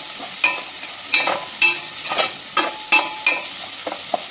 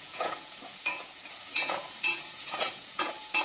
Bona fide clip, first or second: first